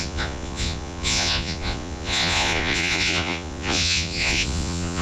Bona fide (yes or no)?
no